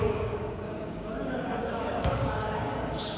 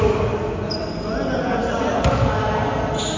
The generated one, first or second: first